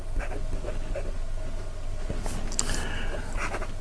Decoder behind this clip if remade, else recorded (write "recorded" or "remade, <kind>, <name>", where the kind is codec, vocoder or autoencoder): recorded